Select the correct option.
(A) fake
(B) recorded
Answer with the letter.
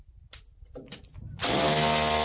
B